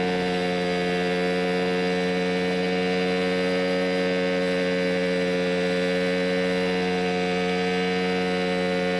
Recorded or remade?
recorded